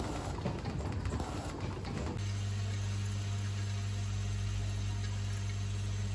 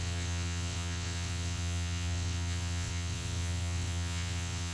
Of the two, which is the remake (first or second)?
second